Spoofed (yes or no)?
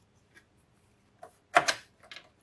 no